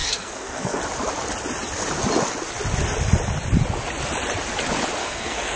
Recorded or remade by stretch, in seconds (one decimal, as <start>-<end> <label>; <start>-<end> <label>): 0.0-0.8 remade; 0.8-5.0 recorded; 5.0-5.6 remade